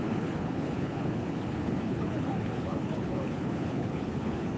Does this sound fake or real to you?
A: fake